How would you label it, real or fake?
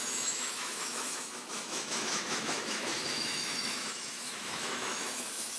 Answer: fake